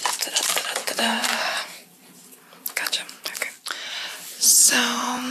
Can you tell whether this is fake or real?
real